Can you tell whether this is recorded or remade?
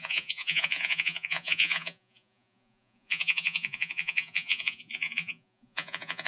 remade